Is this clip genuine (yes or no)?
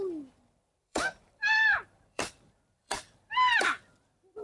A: no